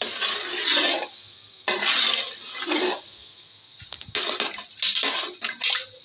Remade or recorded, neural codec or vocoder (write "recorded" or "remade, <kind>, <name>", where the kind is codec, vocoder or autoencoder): recorded